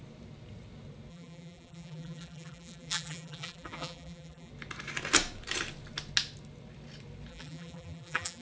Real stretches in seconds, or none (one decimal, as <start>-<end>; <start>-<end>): 0.0-1.1; 4.5-7.3